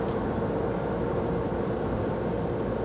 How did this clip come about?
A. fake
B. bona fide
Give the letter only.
B